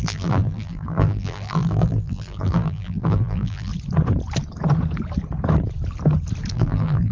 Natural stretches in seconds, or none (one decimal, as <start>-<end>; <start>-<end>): 3.7-6.5